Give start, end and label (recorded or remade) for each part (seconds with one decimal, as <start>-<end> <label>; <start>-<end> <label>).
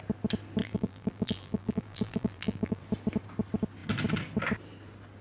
0.0-0.6 recorded; 0.6-2.8 remade; 2.8-5.2 recorded